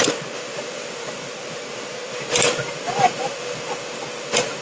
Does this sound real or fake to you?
real